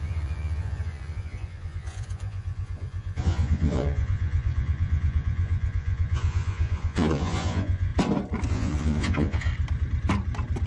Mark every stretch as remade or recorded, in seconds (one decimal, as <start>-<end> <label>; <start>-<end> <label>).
0.0-7.9 remade; 7.9-8.5 recorded; 8.5-9.5 remade; 9.5-10.7 recorded